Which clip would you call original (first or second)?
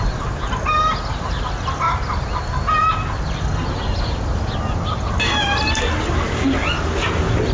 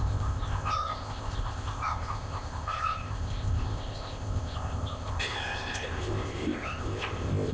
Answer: first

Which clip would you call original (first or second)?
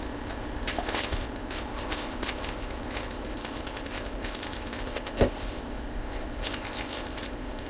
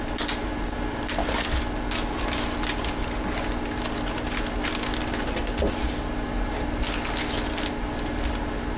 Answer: second